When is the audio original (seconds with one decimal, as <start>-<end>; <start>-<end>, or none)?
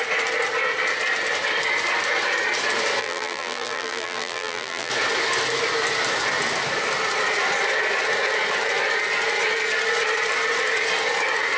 0.0-3.0; 4.9-11.6